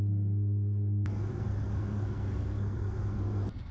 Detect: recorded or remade remade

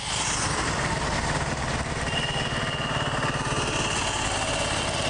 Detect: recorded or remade recorded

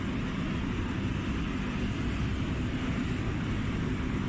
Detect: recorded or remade recorded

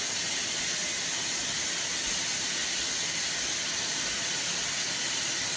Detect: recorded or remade recorded